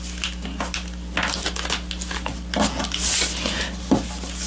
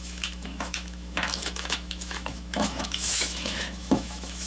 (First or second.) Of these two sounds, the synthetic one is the second